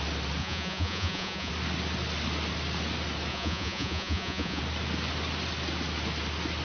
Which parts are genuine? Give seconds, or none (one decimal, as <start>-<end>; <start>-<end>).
0.0-0.4; 1.5-3.3; 4.6-6.6